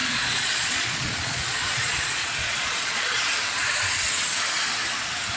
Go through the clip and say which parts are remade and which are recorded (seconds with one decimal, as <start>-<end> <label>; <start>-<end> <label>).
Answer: 0.0-3.2 remade; 3.2-5.4 recorded

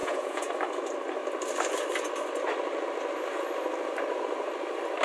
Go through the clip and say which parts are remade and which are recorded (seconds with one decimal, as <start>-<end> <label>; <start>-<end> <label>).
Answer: 0.0-0.5 remade; 0.5-5.0 recorded

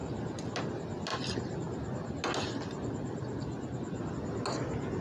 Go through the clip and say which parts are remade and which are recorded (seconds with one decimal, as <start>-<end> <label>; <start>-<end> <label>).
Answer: 0.0-5.0 recorded

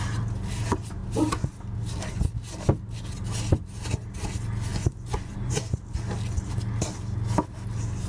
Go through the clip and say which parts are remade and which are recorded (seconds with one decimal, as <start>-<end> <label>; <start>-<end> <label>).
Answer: 0.0-4.7 recorded; 4.7-5.5 remade; 5.5-8.1 recorded